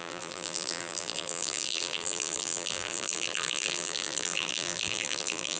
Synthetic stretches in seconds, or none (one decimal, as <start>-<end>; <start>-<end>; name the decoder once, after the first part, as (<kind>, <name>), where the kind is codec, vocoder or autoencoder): 0.0-5.6 (vocoder, BigVGAN v2)